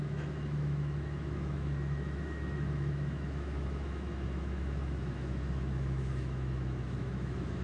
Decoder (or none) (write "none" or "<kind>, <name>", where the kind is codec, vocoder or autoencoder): autoencoder, DAC-VAE